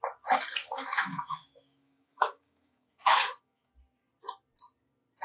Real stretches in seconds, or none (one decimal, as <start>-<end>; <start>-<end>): 0.0-0.6; 3.7-5.2